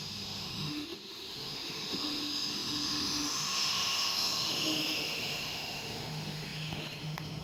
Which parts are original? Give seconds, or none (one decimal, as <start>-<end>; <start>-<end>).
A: none